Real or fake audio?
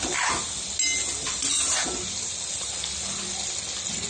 real